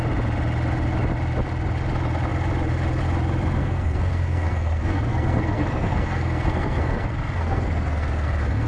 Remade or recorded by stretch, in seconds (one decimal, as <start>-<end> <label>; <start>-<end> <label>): 0.0-3.6 recorded; 3.6-8.7 remade

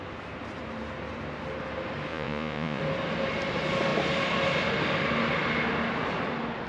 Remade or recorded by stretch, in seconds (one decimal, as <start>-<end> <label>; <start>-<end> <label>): 0.0-2.1 recorded; 2.1-2.8 remade; 2.8-6.7 recorded

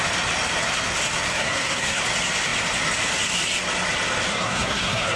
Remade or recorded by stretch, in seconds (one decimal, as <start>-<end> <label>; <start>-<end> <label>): 0.0-1.3 recorded; 1.3-2.0 remade; 2.0-4.3 recorded; 4.3-5.2 remade

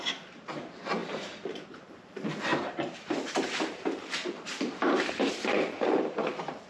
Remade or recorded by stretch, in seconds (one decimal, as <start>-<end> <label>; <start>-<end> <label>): 0.0-6.7 remade

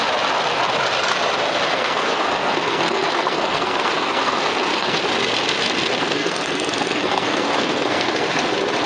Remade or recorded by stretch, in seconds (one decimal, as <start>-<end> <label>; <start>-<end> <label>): 0.0-1.7 recorded; 1.7-5.0 remade; 5.0-6.0 recorded; 6.0-8.4 remade; 8.4-8.9 recorded

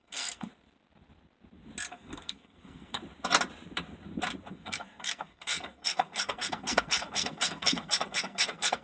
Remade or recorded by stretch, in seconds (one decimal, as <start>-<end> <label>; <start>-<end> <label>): 0.0-0.5 remade; 0.5-1.9 recorded; 1.9-3.0 remade; 3.0-4.5 recorded; 4.5-8.8 remade

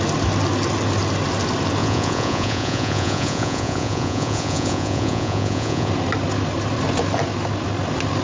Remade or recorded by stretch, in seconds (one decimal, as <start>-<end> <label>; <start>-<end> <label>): 0.0-1.8 recorded; 1.8-5.9 remade; 5.9-8.2 recorded

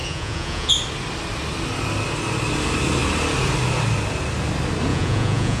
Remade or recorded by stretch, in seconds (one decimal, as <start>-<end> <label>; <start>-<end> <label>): 0.0-0.7 remade; 0.7-4.9 recorded; 4.9-5.6 remade